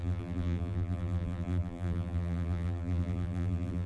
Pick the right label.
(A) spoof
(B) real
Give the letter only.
A